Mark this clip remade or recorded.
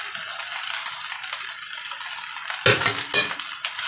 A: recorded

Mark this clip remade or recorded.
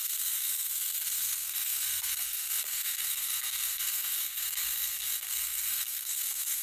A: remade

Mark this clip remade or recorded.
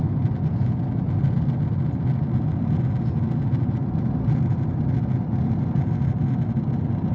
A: recorded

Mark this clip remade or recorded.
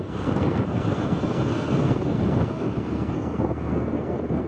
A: remade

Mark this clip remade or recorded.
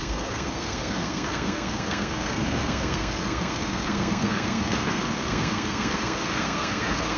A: remade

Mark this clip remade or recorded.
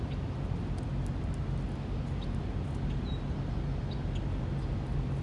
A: recorded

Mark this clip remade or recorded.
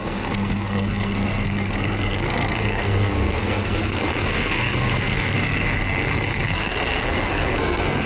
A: remade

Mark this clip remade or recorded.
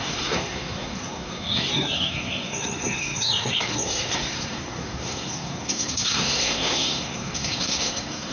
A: remade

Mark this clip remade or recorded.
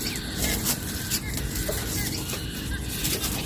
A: recorded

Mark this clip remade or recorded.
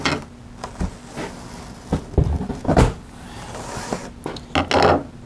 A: recorded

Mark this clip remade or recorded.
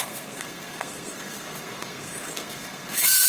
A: remade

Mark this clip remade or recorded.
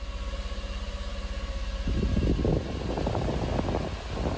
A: recorded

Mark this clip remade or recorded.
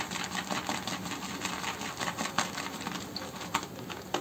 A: recorded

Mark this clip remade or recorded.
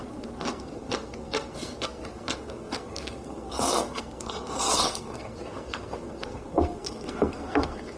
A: remade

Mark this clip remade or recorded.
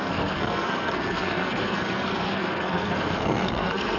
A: remade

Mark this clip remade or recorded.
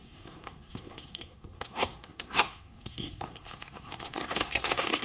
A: remade